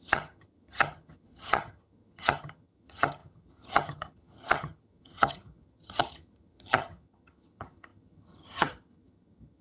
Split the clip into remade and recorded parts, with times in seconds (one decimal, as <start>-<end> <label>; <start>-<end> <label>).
0.0-9.6 remade